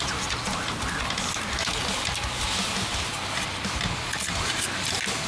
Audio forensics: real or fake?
real